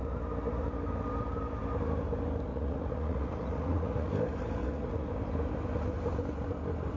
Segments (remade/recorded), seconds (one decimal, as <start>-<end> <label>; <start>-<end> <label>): 0.0-2.5 recorded; 2.5-4.1 remade; 4.1-4.6 recorded; 4.6-5.1 remade; 5.1-7.0 recorded